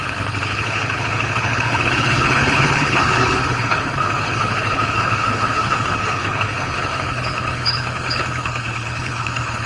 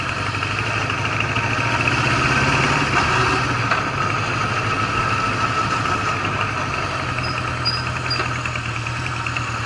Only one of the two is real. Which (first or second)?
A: second